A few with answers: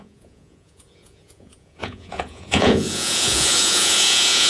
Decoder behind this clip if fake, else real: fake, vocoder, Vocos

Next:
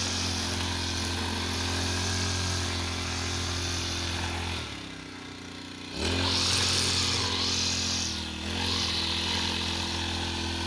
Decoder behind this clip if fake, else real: real